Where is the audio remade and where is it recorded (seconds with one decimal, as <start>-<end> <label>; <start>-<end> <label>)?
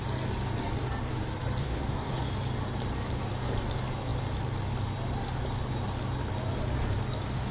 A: 0.0-1.6 recorded; 1.6-2.2 remade; 2.2-7.5 recorded